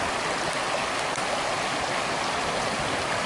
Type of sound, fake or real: real